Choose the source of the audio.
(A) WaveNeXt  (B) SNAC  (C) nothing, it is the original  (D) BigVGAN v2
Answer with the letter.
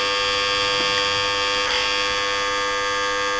C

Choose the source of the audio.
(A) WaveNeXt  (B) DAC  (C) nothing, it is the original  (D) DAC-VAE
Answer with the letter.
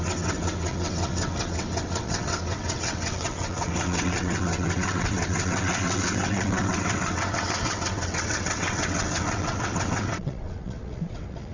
A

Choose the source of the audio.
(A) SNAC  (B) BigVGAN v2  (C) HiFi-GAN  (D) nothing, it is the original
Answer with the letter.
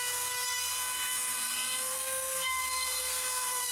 A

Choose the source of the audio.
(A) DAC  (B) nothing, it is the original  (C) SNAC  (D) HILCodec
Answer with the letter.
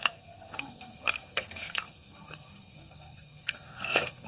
C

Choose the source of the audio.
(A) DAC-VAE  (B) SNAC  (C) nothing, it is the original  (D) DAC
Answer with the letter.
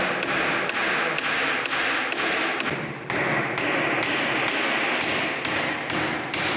C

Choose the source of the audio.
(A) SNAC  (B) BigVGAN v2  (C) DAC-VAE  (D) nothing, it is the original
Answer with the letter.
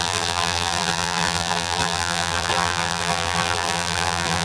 B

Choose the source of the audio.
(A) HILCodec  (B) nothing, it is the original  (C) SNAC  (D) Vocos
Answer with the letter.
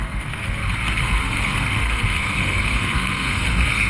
C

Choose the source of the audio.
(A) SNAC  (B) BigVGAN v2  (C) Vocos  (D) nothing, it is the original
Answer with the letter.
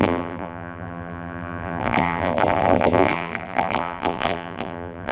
B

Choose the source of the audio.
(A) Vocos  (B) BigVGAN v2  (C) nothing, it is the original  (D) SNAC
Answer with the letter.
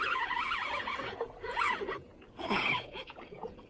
A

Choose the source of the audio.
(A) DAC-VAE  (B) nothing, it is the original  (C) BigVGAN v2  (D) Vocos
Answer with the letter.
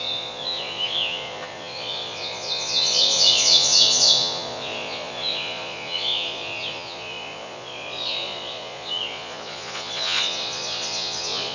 D